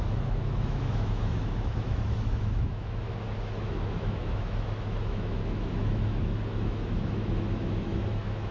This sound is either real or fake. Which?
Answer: fake